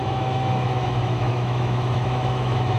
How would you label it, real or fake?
fake